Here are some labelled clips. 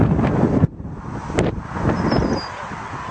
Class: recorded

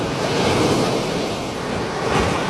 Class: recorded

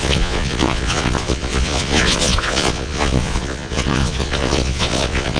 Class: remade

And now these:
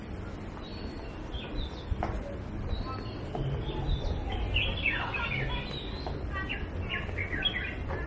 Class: recorded